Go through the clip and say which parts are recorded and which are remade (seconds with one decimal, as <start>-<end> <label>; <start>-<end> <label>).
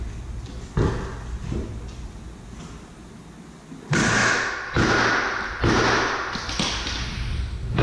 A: 0.0-7.8 recorded